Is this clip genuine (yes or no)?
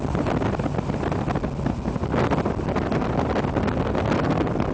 yes